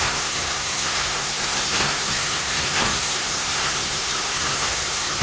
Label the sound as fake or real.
fake